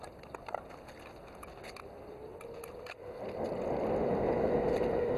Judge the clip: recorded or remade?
recorded